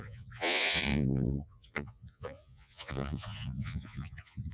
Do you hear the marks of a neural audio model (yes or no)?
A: yes